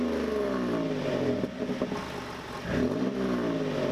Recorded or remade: recorded